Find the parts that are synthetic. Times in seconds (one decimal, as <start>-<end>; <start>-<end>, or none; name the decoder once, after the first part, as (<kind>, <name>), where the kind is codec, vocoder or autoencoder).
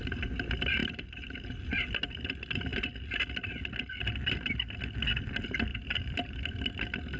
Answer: 0.8-1.4 (vocoder, BigVGAN v2); 5.7-6.3